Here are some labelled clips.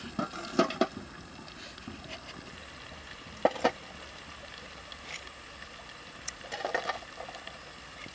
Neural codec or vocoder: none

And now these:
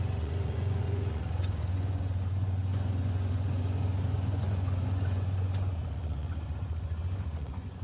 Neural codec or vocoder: vocoder, Vocos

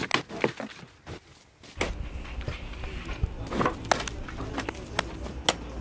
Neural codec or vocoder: none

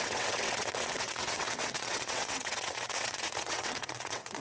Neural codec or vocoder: vocoder, WaveNeXt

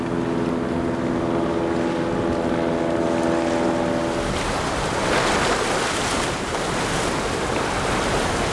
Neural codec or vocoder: none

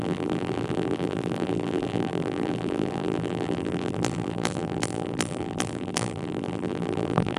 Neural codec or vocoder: vocoder, BigVGAN v2